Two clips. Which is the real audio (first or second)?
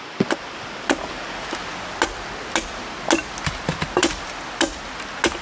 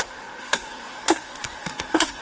first